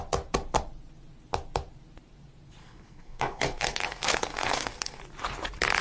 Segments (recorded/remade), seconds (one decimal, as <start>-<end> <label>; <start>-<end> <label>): 0.0-2.6 recorded; 2.6-5.0 remade; 5.0-5.8 recorded